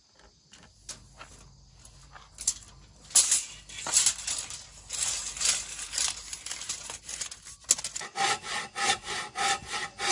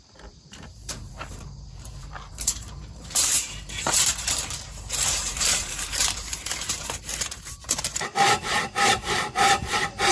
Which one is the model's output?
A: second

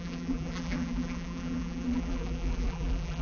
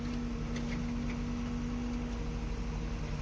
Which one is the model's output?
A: first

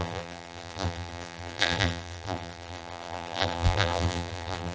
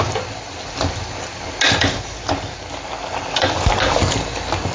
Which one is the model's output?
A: first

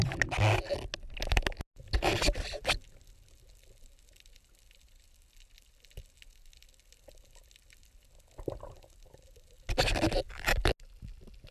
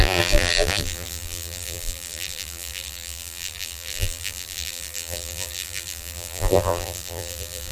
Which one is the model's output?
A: second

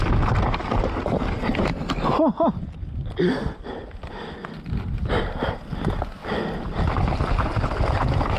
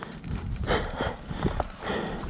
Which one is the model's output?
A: second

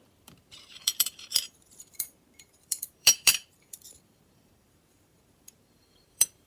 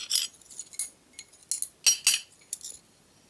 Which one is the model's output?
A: first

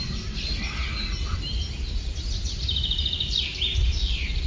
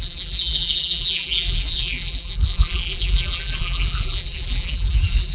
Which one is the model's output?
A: second